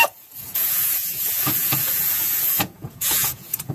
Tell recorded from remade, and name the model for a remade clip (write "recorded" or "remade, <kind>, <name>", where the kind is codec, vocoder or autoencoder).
remade, vocoder, Vocos